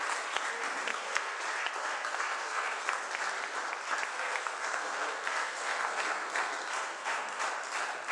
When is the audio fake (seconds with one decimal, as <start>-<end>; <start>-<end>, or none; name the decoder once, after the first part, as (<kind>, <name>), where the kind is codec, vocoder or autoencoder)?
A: 0.9-1.4 (codec, SNAC); 1.8-2.9; 4.1-7.4